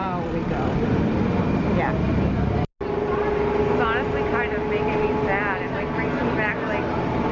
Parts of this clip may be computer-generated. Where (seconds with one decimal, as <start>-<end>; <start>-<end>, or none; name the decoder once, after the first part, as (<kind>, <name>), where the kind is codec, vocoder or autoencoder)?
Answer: none